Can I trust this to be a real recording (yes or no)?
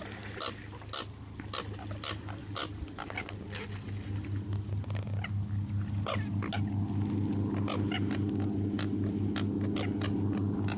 yes